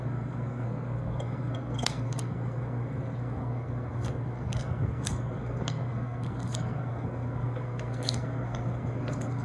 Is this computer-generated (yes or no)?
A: yes